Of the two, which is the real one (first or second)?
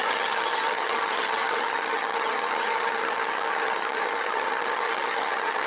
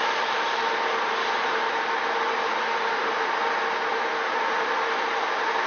second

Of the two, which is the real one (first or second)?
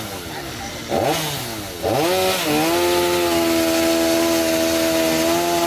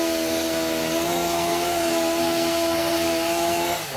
first